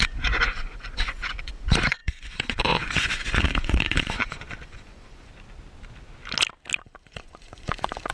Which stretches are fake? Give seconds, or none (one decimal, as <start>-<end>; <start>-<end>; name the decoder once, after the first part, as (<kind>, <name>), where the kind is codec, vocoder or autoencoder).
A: 0.0-5.3 (vocoder, Vocos); 6.8-8.1